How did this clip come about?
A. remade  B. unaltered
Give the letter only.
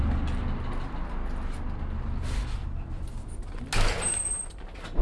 B